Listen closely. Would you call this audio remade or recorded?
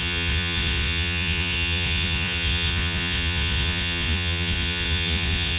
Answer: remade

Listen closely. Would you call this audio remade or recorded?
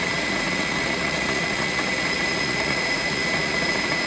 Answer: remade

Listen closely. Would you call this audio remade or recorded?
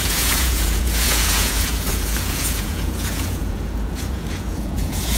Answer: remade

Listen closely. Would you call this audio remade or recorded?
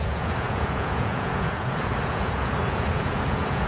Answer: remade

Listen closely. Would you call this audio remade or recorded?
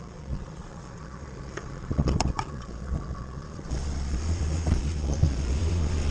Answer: remade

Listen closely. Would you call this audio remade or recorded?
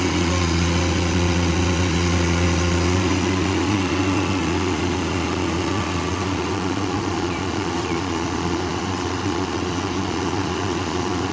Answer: remade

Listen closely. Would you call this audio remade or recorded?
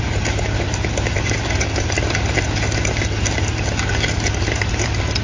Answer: recorded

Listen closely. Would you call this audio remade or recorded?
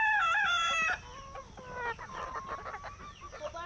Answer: recorded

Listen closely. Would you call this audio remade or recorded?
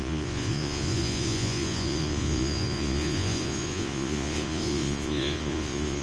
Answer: remade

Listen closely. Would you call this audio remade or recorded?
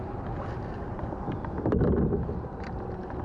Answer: recorded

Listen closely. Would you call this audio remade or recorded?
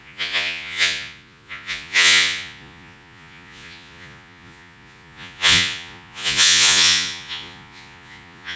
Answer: remade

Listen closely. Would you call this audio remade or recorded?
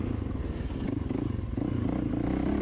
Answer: recorded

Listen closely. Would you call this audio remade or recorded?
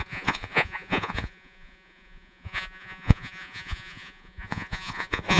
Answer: remade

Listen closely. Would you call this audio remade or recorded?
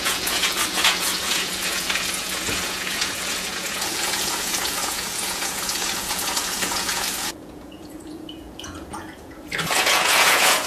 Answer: remade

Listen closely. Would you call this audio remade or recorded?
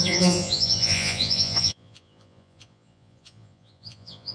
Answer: remade